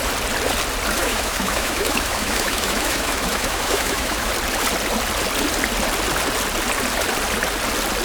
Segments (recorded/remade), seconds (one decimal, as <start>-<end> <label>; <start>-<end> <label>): 0.0-1.0 recorded; 1.0-4.3 remade; 4.3-8.0 recorded